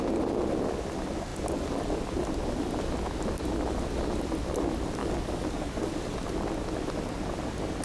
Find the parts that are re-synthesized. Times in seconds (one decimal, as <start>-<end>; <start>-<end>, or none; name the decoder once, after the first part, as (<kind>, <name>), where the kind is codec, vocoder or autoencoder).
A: 5.0-5.9 (codec, DAC)